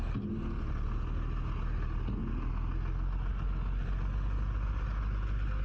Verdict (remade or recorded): recorded